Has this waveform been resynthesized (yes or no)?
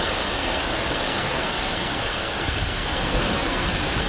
yes